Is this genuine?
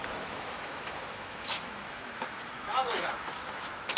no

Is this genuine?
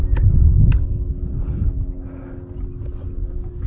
yes